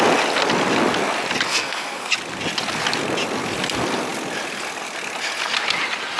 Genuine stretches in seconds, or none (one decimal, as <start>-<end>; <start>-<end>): 0.0-1.5; 2.1-6.2